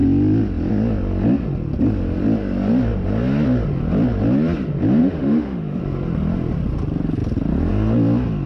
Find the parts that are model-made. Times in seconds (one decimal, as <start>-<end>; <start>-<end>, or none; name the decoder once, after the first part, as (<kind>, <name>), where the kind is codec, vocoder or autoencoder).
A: 5.0-5.8 (autoencoder, DAC-VAE)

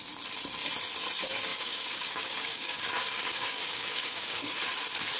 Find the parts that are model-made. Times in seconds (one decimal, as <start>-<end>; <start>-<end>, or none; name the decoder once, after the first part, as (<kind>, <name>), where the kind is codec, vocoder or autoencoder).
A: 1.5-4.6 (codec, DAC)

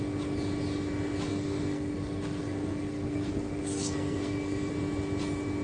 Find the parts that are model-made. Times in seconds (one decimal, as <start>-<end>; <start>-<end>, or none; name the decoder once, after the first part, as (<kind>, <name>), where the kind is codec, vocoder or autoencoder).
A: 1.3-4.7 (codec, SNAC)

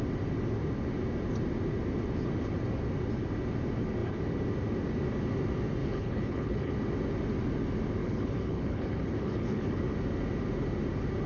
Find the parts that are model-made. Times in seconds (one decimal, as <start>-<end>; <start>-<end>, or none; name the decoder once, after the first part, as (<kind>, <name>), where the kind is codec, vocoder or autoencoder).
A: 5.8-6.7 (codec, HILCodec); 8.0-9.8

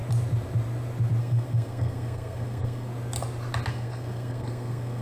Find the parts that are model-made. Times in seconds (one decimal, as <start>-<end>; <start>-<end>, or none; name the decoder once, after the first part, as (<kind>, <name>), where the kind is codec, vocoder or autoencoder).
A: 1.2-2.9 (codec, SNAC); 3.7-5.0